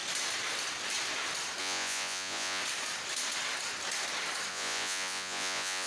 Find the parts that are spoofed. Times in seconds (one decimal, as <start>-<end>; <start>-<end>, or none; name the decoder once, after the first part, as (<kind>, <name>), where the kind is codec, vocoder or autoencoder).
1.6-2.6 (vocoder, Vocos); 4.5-5.9